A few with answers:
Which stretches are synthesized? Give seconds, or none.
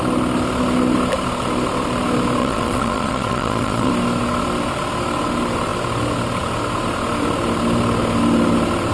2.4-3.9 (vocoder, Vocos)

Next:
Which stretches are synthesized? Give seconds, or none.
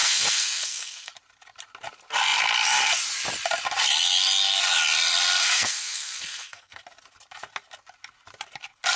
0.0-1.1 (codec, SNAC); 5.4-6.8